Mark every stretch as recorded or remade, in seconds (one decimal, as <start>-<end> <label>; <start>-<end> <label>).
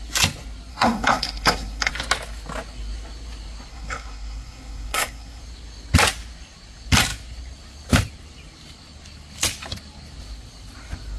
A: 0.0-0.7 recorded; 0.7-1.9 remade; 1.9-3.7 recorded; 3.7-5.4 remade; 5.4-11.2 recorded